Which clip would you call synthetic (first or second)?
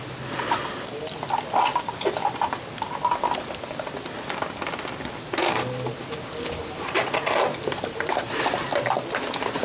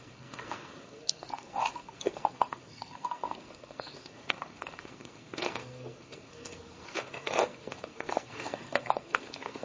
second